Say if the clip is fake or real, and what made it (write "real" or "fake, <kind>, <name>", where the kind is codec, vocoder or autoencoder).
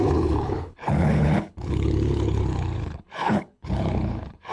fake, codec, HILCodec